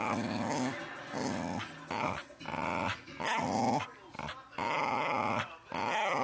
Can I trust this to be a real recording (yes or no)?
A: yes